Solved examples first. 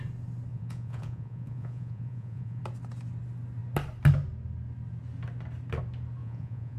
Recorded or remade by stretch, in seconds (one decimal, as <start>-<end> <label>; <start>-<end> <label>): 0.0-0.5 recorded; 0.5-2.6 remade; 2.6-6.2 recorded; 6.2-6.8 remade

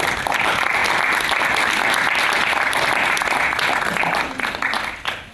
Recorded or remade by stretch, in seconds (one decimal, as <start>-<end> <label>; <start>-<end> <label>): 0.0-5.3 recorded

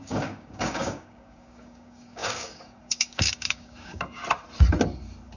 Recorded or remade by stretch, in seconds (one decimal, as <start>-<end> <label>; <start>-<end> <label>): 0.0-4.2 remade; 4.2-5.4 recorded

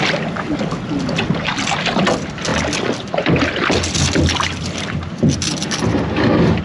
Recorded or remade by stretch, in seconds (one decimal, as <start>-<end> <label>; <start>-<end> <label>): 0.0-6.6 recorded